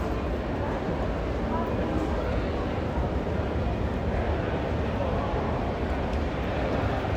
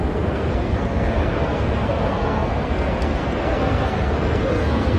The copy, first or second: second